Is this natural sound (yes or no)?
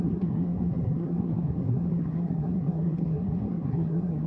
no